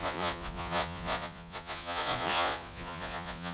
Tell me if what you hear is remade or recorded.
remade